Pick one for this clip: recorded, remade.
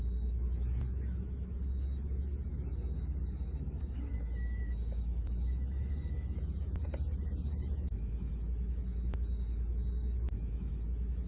remade